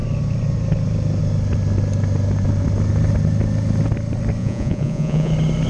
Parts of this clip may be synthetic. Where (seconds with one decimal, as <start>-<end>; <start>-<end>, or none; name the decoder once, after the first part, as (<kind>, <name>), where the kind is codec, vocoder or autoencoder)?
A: 4.4-5.3 (vocoder, Vocos)